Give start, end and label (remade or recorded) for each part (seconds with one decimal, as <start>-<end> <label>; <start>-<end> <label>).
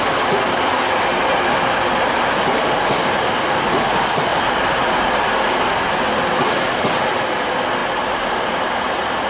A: 0.0-4.3 recorded; 4.3-4.9 remade; 4.9-7.8 recorded; 7.8-8.9 remade; 8.9-9.3 recorded